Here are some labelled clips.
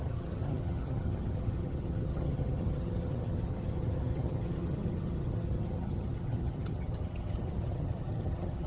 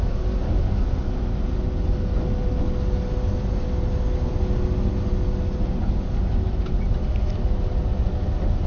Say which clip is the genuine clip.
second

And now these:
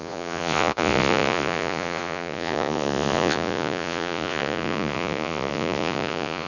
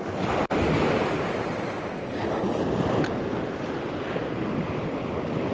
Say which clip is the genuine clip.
second